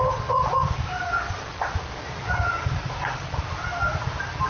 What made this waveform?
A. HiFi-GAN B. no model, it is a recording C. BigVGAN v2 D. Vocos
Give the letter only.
B